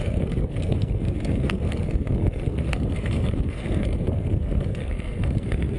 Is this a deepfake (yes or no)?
yes